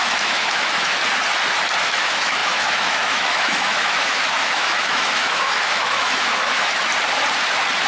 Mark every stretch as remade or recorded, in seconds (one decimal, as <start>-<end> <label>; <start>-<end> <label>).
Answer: 0.0-1.0 remade; 1.0-1.8 recorded; 1.8-6.9 remade; 6.9-7.9 recorded